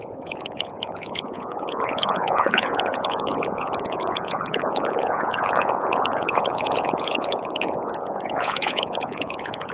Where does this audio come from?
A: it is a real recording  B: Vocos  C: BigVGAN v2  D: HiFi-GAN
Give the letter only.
B